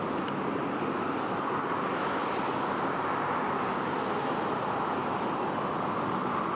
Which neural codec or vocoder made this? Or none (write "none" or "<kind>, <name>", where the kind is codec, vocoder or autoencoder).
none